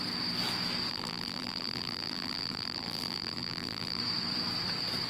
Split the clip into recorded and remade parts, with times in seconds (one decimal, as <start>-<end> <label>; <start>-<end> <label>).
0.0-0.9 recorded; 0.9-4.0 remade; 4.0-5.1 recorded

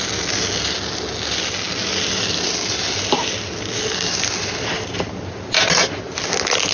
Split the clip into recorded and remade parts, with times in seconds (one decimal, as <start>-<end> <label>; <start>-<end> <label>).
0.0-1.8 recorded; 1.8-5.8 remade; 5.8-6.7 recorded

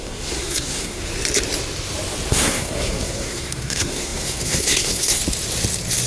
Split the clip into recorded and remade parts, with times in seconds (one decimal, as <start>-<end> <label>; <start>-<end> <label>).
0.0-1.1 remade; 1.1-2.3 recorded; 2.3-5.2 remade; 5.2-6.1 recorded

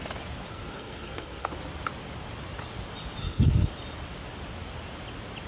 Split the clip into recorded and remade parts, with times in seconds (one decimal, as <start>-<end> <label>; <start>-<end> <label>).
0.0-0.5 recorded; 0.5-1.5 remade; 1.5-3.2 recorded; 3.2-3.7 remade; 3.7-5.5 recorded

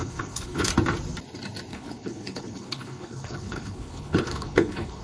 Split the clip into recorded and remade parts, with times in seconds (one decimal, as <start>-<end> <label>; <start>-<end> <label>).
0.0-0.7 remade; 0.7-1.7 recorded; 1.7-5.0 remade

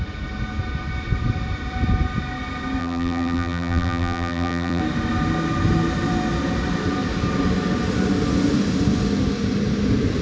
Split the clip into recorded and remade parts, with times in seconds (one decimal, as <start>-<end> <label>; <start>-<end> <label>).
0.0-2.8 recorded; 2.8-4.8 remade; 4.8-10.2 recorded